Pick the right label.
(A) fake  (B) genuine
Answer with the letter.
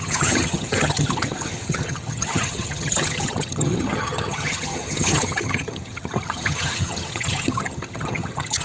A